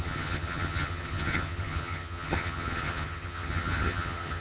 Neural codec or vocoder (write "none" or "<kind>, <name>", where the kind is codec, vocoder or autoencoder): vocoder, HiFi-GAN